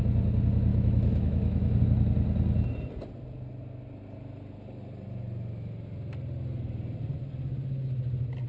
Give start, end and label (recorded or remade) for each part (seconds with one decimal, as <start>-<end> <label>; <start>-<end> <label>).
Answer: 0.0-0.7 recorded; 0.7-1.8 remade; 1.8-8.5 recorded